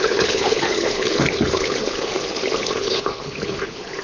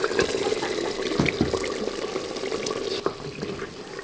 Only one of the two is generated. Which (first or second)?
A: first